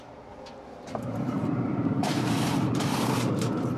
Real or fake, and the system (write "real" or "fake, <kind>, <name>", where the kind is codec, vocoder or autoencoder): fake, vocoder, BigVGAN v2